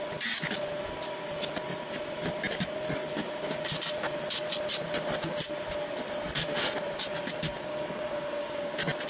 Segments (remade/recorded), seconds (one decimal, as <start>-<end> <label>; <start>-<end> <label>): 0.0-7.1 recorded; 7.1-8.7 remade; 8.7-9.1 recorded